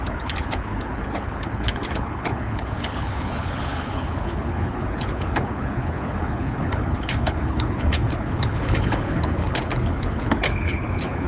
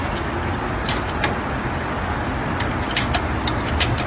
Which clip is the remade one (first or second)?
first